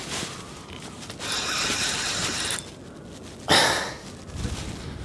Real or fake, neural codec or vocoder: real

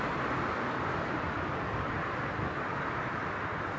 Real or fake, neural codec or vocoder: real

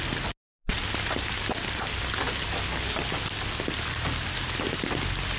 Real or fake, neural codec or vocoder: real